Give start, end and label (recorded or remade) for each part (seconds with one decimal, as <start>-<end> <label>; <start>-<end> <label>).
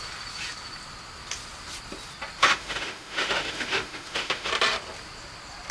0.0-2.4 recorded; 2.4-4.5 remade; 4.5-5.7 recorded